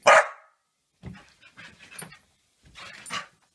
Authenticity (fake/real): real